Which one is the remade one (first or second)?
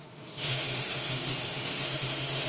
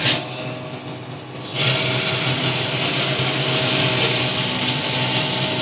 first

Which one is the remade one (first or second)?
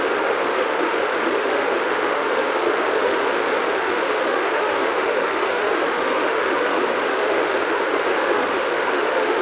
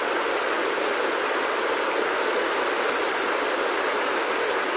first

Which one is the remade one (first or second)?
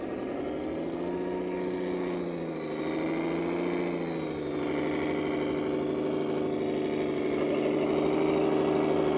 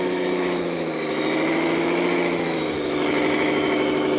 second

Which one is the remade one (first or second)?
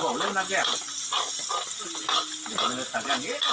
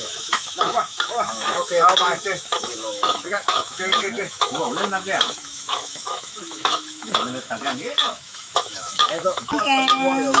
second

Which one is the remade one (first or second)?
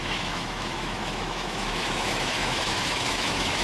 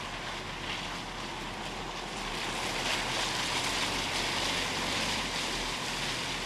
first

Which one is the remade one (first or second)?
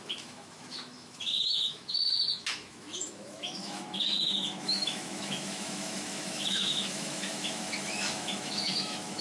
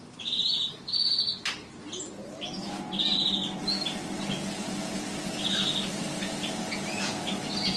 first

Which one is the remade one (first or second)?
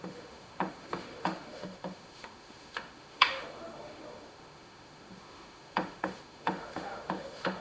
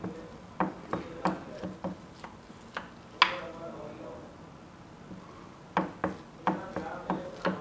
first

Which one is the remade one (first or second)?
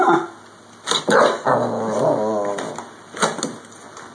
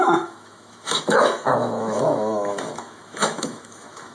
second